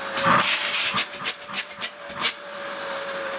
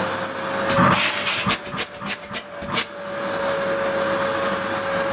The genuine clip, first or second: second